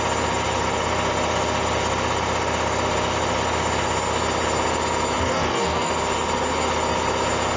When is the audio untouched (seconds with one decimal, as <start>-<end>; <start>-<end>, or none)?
0.0-5.2; 5.9-7.6